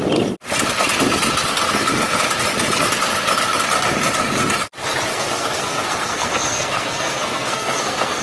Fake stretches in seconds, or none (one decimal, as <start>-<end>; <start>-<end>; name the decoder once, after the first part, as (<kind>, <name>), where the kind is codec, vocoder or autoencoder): 5.1-8.2 (codec, SNAC)